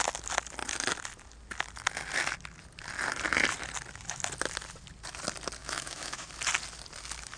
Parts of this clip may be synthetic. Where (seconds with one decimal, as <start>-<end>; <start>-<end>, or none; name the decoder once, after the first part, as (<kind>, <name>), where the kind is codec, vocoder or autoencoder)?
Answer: 5.6-6.3 (autoencoder, DAC-VAE)